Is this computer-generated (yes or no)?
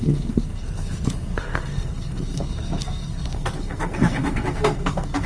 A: yes